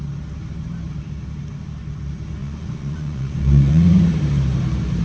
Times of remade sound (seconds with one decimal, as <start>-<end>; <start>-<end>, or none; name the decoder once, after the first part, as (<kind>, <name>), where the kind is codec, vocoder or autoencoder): 2.4-4.1 (vocoder, Vocos)